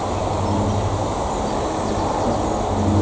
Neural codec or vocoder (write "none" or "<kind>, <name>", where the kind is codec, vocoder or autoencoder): none